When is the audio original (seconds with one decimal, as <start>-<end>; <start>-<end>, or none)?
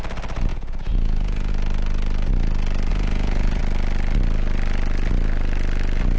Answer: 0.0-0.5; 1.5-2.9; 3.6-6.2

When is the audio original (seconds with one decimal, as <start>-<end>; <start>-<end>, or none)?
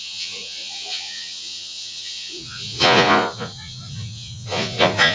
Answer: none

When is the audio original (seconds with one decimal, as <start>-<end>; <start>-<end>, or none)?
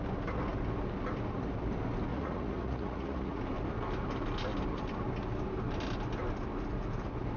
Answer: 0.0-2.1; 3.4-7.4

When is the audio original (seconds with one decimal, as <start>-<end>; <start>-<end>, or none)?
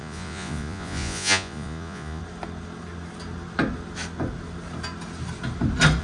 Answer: 2.2-6.0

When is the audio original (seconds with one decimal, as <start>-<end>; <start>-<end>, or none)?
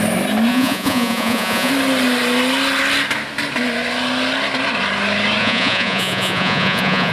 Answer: 0.0-0.5; 1.7-5.4